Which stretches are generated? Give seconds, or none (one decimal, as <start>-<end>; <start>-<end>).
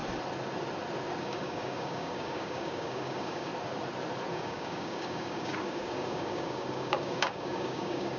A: 1.2-3.5; 4.3-8.2